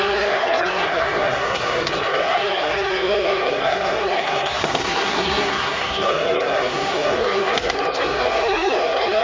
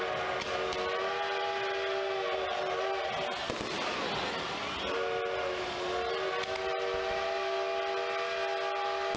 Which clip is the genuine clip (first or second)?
second